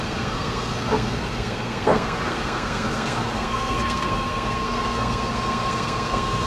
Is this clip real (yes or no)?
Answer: no